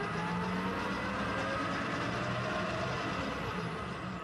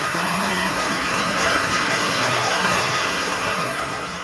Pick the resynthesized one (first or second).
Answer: second